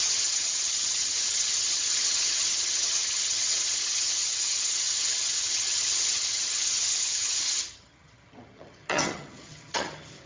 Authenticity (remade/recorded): remade